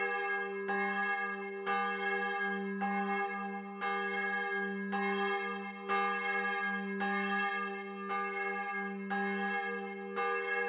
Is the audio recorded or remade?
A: recorded